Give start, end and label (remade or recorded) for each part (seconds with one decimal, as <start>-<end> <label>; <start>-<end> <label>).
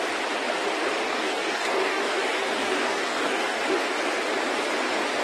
0.0-1.0 recorded; 1.0-3.6 remade; 3.6-5.2 recorded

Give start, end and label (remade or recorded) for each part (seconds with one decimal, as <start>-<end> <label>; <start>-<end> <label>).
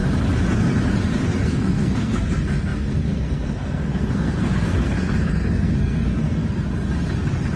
0.0-1.4 recorded; 1.4-6.4 remade; 6.4-7.6 recorded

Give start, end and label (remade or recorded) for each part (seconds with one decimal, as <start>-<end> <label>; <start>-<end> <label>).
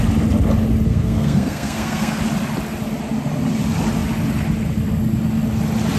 0.0-0.9 recorded; 0.9-2.2 remade; 2.2-6.0 recorded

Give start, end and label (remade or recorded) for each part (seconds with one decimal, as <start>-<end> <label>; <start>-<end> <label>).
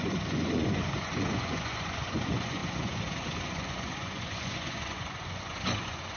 0.0-6.2 remade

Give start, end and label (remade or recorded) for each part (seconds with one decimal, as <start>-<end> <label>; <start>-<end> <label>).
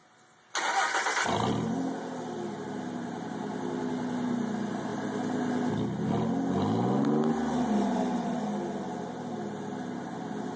0.0-10.6 recorded